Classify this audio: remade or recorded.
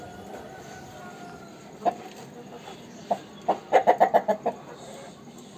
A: recorded